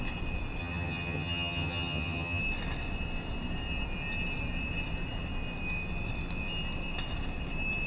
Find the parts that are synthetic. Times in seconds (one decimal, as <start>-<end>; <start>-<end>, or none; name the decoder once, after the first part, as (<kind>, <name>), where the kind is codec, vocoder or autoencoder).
0.6-2.4 (vocoder, HiFi-GAN)